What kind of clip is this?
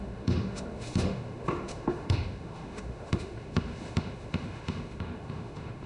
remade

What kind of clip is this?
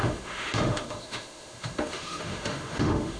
remade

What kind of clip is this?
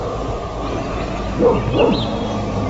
recorded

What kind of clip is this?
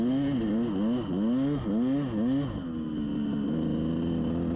recorded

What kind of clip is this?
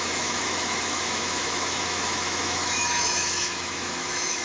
remade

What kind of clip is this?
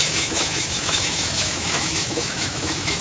remade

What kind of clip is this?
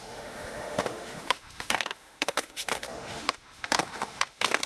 remade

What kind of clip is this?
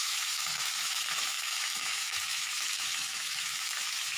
remade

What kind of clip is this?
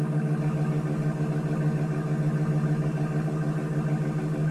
recorded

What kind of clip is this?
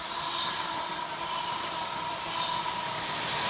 recorded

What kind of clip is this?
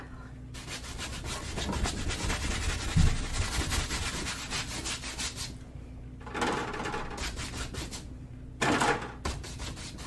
recorded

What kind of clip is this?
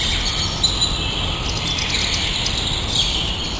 recorded